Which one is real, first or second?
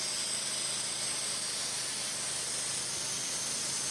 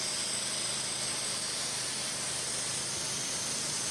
first